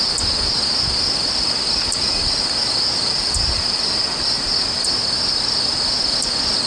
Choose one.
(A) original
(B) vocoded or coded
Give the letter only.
A